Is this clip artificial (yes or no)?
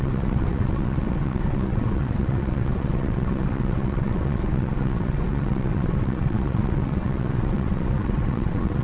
yes